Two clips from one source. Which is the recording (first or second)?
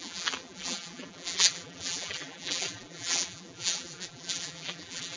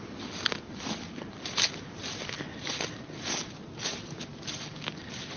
second